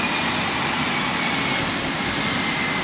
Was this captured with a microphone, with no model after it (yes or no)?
yes